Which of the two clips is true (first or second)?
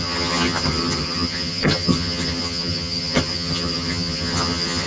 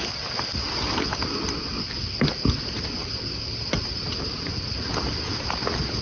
second